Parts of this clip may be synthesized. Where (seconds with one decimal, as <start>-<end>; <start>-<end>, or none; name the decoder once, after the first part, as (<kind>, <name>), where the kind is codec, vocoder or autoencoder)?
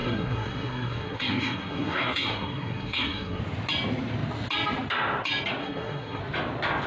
0.0-3.4 (codec, SNAC); 5.6-6.2